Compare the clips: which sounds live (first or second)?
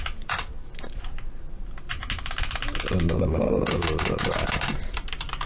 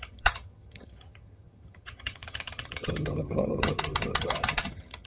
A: first